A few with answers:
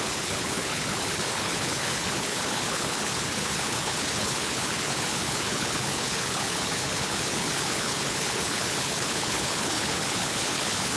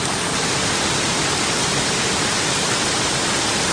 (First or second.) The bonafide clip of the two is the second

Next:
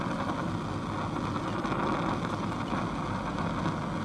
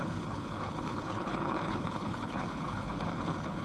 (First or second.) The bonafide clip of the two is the first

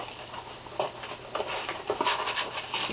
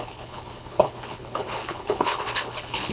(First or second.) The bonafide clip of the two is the first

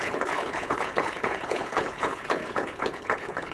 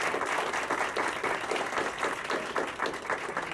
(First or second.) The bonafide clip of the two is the second